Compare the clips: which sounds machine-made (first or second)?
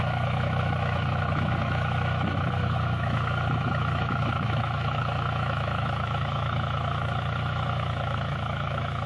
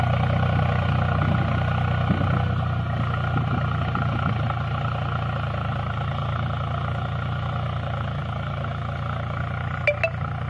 first